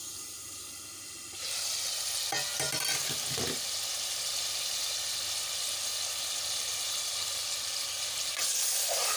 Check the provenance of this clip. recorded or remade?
recorded